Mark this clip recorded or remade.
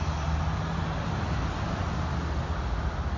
recorded